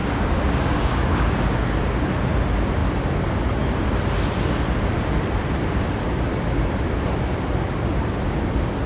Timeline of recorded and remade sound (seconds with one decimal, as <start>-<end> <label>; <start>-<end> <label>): 0.0-2.1 remade; 2.1-8.9 recorded